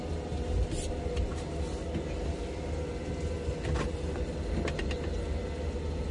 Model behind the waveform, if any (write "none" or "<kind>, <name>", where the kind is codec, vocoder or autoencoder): none